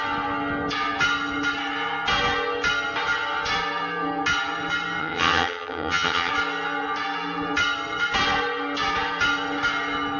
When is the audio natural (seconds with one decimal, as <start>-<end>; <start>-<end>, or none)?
0.0-5.0; 6.3-10.2